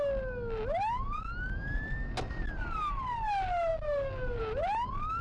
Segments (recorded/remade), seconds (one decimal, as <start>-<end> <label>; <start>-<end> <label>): 0.0-3.7 recorded; 3.7-4.4 remade; 4.4-5.2 recorded